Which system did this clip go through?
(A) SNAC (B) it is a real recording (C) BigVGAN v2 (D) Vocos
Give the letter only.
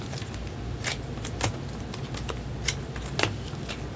B